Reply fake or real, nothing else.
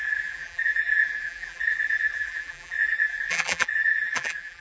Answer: fake